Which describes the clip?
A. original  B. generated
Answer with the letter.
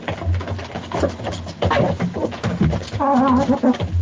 A